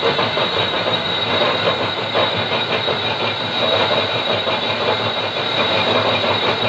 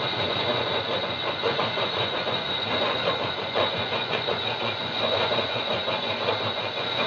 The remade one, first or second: second